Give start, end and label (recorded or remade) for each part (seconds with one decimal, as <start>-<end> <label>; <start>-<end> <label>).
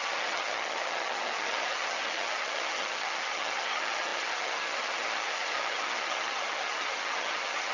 0.0-7.7 remade